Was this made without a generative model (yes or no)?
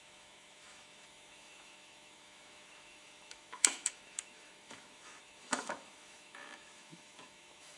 no